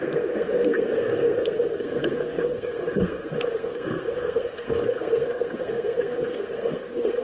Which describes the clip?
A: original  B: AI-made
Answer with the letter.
B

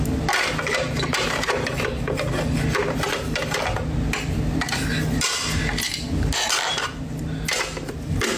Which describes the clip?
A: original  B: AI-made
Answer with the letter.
A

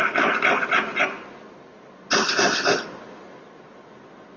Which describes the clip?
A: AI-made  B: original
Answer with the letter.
B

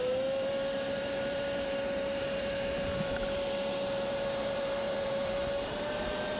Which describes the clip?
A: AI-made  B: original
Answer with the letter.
A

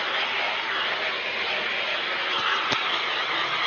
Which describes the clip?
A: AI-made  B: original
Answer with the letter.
B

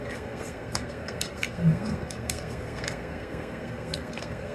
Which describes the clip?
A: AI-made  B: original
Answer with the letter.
A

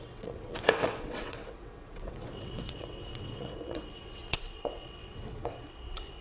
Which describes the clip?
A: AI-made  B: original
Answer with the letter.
A